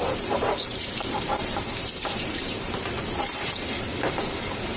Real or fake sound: fake